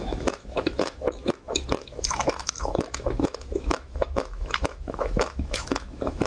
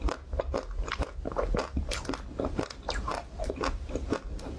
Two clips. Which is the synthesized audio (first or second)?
first